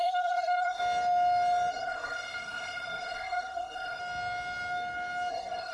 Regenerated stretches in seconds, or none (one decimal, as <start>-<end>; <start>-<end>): 0.0-0.8; 1.7-4.0; 5.3-5.7